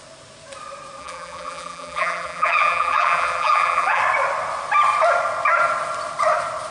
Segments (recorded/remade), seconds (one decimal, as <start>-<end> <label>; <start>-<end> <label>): 0.0-1.0 recorded; 1.0-4.0 remade; 4.0-6.7 recorded